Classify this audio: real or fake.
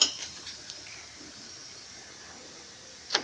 fake